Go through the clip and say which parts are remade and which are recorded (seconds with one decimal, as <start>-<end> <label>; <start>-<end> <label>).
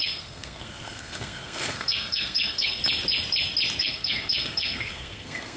0.0-2.8 remade; 2.8-3.8 recorded; 3.8-5.6 remade